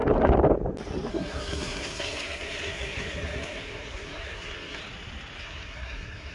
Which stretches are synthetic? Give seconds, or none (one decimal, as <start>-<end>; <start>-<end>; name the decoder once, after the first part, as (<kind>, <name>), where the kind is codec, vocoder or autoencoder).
1.1-4.8 (codec, SNAC); 5.4-6.3